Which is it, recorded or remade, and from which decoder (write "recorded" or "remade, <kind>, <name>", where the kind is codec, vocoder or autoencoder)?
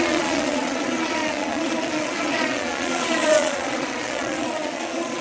remade, vocoder, Vocos